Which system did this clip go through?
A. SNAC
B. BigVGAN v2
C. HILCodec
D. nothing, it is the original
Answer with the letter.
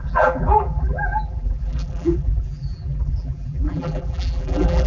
B